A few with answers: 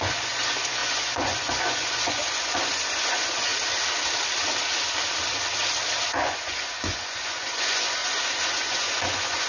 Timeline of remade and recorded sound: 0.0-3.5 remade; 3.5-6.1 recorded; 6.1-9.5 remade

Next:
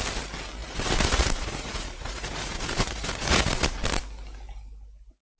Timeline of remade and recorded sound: 0.0-0.6 recorded; 0.6-3.8 remade; 3.8-5.4 recorded

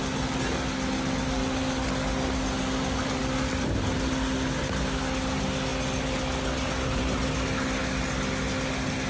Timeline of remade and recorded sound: 0.0-9.1 recorded

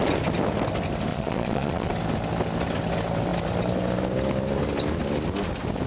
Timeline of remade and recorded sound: 0.0-1.1 recorded; 1.1-1.9 remade; 1.9-5.9 recorded

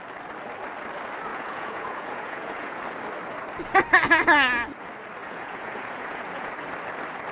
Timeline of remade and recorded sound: 0.0-1.3 recorded; 1.3-2.8 remade; 2.8-5.2 recorded; 5.2-6.5 remade; 6.5-7.3 recorded

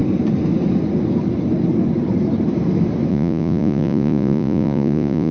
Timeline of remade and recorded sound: 0.0-3.1 recorded; 3.1-5.3 remade

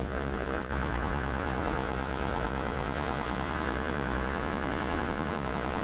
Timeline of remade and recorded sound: 0.0-5.8 remade

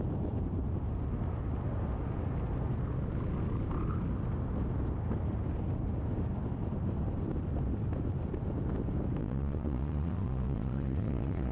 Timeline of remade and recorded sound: 0.0-9.2 recorded; 9.2-11.5 remade